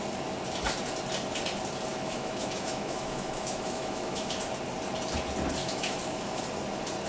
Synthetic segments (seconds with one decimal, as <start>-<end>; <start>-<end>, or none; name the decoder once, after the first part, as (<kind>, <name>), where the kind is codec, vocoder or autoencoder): 1.9-4.4 (autoencoder, DAC-VAE); 5.6-6.4